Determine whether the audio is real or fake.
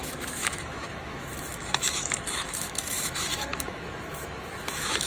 fake